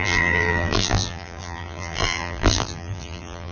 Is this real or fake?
fake